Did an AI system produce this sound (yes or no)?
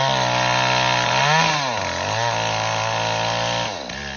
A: no